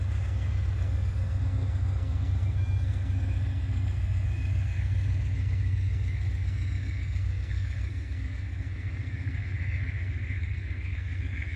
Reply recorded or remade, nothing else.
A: remade